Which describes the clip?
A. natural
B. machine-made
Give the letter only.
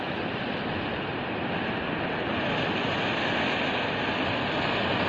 A